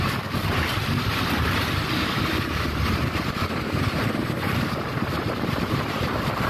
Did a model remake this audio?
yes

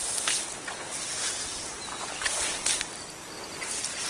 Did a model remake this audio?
no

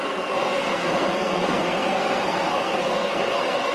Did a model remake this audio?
yes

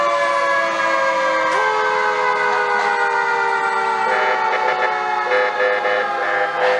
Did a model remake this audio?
no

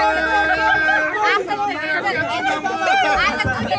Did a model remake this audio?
no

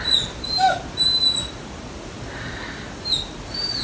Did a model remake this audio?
no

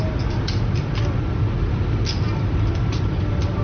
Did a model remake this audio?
no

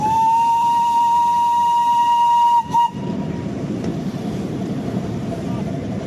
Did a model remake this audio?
yes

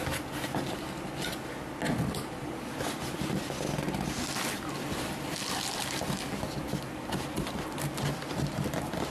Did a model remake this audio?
no